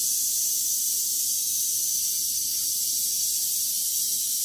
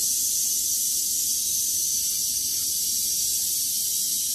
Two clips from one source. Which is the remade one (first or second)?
first